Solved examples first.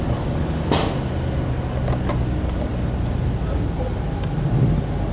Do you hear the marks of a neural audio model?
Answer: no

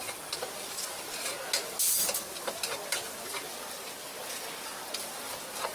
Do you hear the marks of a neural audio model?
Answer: no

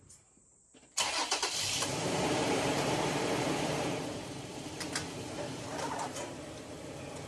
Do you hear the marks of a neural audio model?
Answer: yes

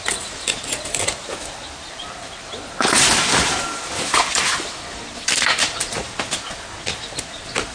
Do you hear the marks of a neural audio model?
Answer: no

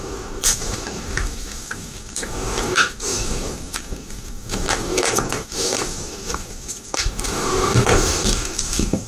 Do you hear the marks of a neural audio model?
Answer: yes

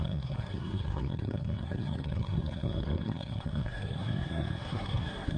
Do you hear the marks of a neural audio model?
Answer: yes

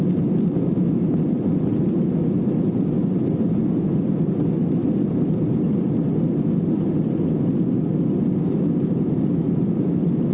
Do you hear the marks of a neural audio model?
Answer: no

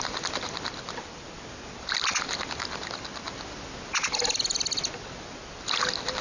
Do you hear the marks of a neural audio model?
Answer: no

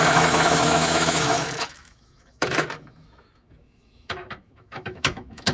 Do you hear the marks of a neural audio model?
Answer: yes